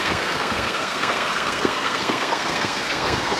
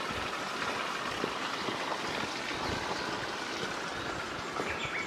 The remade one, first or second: first